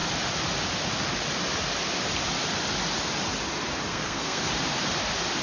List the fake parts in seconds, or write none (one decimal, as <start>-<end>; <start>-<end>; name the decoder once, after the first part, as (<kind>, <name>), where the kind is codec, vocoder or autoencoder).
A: 3.9-4.5 (codec, SNAC)